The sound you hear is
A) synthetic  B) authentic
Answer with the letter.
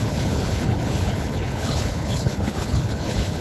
A